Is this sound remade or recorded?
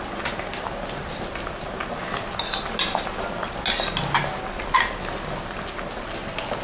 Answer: recorded